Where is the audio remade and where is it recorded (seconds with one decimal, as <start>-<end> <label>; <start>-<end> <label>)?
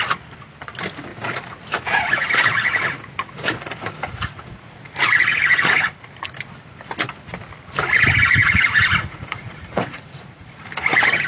0.0-1.1 recorded; 1.1-6.1 remade; 6.1-8.4 recorded; 8.4-10.7 remade; 10.7-11.3 recorded